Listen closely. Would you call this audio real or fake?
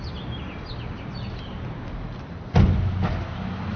real